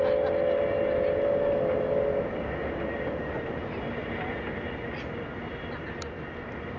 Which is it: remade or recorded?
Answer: recorded